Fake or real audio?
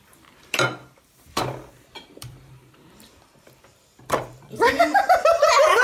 fake